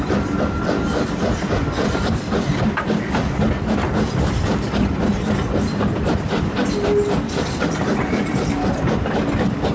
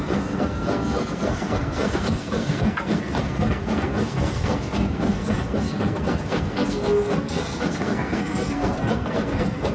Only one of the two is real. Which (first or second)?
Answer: first